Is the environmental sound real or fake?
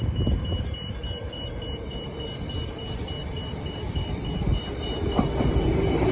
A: real